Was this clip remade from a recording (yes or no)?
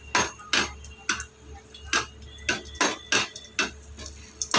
no